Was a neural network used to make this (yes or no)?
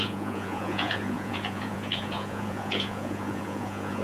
yes